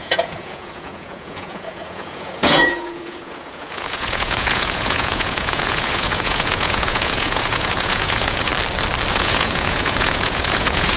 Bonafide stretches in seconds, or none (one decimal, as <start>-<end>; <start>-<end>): 8.5-9.1